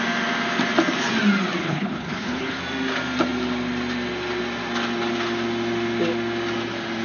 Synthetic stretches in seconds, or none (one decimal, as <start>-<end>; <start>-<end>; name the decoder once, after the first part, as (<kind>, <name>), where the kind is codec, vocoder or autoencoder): 1.6-2.6 (codec, HILCodec)